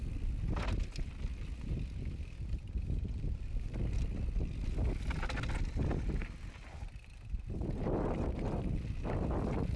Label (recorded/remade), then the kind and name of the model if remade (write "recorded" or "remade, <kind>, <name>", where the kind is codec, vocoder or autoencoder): recorded